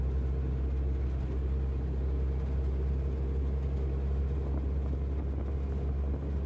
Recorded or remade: recorded